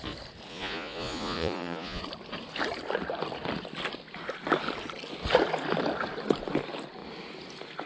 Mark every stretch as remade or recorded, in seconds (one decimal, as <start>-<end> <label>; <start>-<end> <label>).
0.0-0.5 recorded; 0.5-2.0 remade; 2.0-7.9 recorded